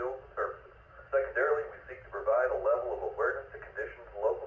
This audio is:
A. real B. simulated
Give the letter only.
A